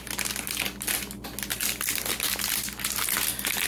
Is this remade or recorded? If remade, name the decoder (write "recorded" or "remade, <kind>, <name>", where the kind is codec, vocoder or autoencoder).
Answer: recorded